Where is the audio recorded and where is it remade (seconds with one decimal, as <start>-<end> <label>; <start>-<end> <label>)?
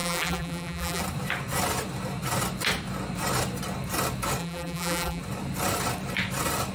0.0-1.0 remade; 1.0-4.4 recorded; 4.4-5.2 remade; 5.2-6.7 recorded